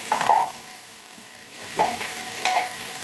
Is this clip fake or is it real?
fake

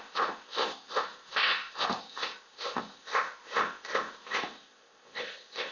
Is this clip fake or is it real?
fake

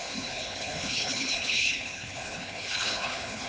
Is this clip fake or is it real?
fake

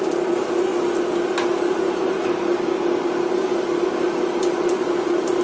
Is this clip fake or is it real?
real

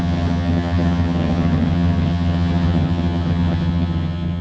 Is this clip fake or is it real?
fake